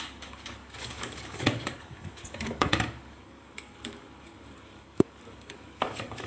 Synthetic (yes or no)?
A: yes